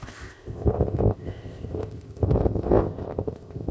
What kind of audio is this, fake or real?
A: fake